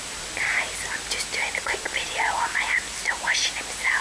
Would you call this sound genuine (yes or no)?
yes